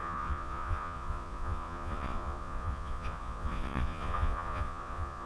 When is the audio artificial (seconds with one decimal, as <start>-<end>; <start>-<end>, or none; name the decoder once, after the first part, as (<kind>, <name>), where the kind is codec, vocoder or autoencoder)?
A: 0.0-5.3 (vocoder, Vocos)